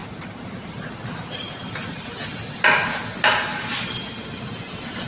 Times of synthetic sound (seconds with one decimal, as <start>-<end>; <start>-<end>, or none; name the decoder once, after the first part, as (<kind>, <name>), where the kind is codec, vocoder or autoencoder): 0.0-2.3 (vocoder, BigVGAN v2); 3.3-4.4